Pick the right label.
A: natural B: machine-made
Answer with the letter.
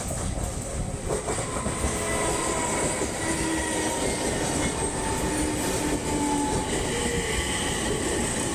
A